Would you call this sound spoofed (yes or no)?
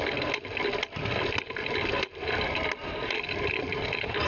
no